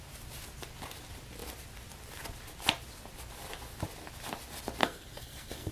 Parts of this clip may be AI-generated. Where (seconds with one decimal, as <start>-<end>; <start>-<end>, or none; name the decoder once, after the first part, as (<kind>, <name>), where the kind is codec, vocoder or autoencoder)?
4.8-5.7 (codec, SNAC)